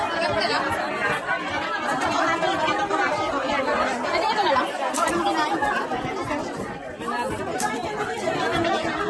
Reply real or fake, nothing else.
real